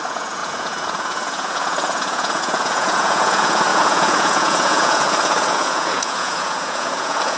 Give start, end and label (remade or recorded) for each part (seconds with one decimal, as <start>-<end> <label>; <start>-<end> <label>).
0.0-7.4 remade